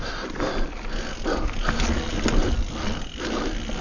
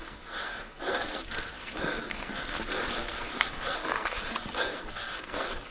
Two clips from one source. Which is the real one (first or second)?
first